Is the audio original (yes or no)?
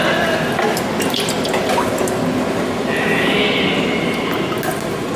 yes